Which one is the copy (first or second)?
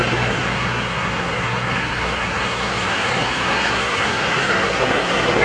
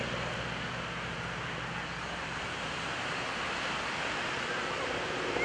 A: first